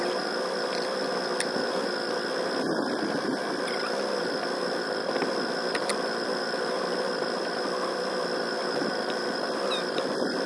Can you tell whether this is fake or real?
fake